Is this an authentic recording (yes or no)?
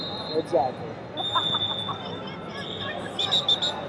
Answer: yes